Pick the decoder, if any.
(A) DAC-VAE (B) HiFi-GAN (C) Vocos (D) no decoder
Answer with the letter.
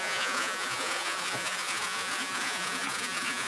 C